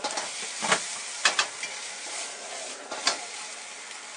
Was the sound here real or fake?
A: real